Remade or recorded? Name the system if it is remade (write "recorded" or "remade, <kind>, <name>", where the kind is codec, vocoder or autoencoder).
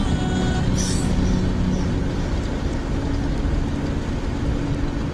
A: recorded